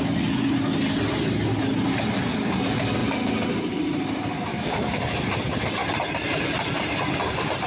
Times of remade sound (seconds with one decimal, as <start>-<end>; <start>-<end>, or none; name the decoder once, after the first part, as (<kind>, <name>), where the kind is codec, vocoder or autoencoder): 4.5-5.0 (autoencoder, DAC-VAE)